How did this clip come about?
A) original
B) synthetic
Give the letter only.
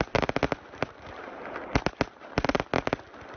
A